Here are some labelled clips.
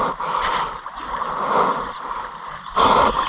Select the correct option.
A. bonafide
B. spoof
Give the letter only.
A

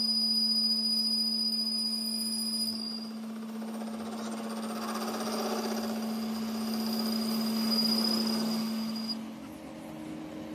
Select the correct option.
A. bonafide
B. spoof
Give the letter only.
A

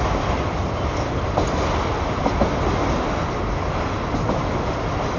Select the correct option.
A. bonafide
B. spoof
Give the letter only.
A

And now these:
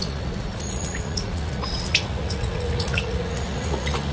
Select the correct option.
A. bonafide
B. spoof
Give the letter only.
B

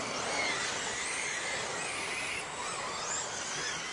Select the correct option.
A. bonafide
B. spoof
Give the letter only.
A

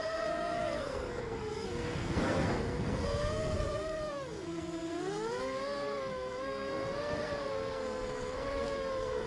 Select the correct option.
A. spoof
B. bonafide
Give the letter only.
A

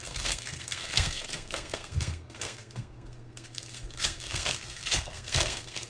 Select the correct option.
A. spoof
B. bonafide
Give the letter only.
A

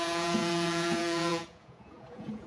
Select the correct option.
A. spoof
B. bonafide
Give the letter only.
A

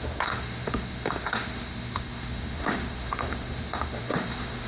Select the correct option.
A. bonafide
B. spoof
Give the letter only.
B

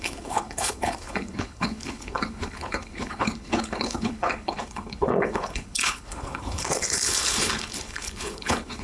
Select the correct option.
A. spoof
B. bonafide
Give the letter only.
A